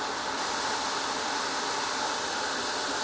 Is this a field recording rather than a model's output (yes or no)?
yes